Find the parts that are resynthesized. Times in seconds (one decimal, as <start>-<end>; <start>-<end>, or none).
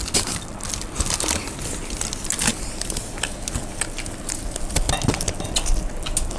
none